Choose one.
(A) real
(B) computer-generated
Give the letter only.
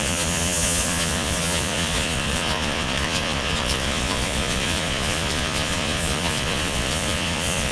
B